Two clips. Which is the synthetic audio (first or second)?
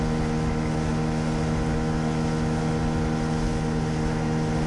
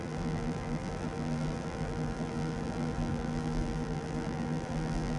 second